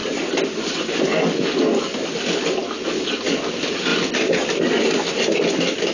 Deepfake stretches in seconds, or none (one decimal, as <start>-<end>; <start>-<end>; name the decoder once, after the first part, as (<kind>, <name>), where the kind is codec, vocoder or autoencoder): none